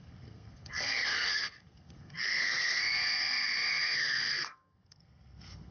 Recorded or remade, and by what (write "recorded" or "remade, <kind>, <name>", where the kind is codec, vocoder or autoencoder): remade, codec, SNAC